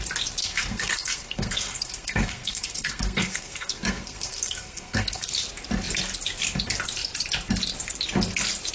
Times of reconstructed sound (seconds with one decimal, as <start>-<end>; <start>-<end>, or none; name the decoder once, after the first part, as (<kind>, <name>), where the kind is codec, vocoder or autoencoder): 0.4-5.3 (codec, SNAC)